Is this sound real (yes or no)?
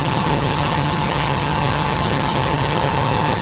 no